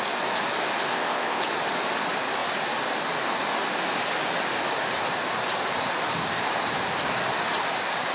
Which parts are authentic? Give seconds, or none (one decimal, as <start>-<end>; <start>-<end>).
0.0-0.9; 1.4-8.1